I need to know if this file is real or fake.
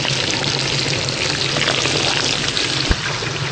real